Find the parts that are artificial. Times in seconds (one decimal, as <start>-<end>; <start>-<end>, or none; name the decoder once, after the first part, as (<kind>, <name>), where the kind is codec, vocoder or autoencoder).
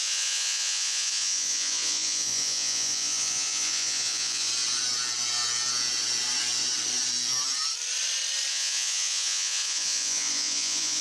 0.0-4.5 (vocoder, Vocos); 8.5-11.0